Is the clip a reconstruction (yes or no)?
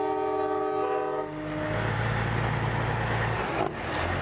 no